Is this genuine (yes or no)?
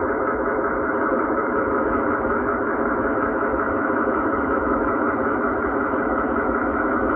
no